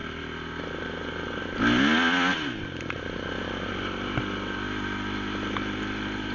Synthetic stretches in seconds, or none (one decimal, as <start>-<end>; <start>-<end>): none